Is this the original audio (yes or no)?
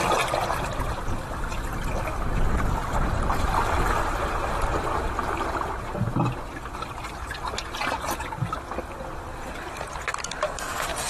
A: yes